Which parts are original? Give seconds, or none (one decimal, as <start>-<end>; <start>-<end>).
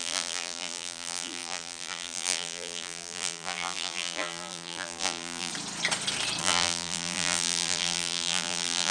5.5-6.4